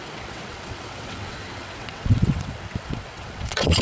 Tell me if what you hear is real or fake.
fake